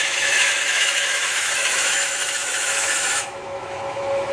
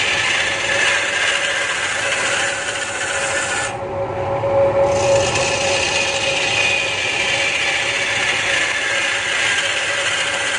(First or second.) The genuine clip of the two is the second